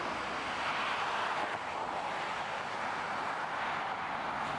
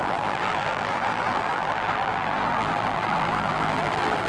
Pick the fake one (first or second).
second